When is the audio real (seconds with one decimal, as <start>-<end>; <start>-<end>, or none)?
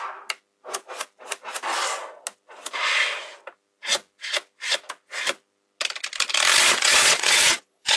0.0-6.6